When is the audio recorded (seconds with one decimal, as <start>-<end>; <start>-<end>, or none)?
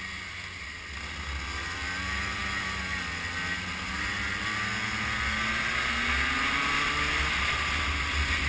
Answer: 0.0-8.5